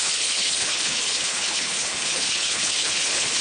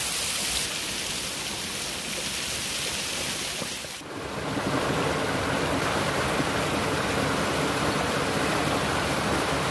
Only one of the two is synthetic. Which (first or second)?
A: first